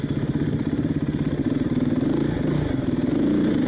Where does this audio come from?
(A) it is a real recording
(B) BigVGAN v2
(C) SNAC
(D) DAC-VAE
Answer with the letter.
B